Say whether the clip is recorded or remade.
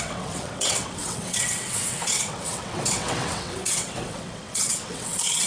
remade